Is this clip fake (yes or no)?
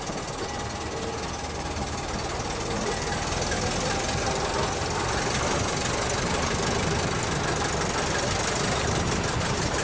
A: no